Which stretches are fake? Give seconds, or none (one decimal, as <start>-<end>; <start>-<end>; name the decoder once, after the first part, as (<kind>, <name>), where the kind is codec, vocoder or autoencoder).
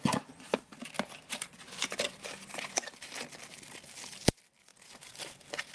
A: none